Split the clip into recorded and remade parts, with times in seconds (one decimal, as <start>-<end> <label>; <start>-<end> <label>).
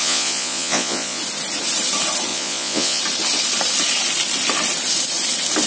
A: 0.0-1.2 remade; 1.2-2.3 recorded; 2.3-3.0 remade; 3.0-5.7 recorded